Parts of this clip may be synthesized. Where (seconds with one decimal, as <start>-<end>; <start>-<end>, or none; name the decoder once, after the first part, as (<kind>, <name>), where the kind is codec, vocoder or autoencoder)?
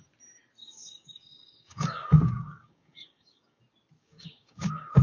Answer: 0.6-3.6 (codec, DAC); 4.0-5.0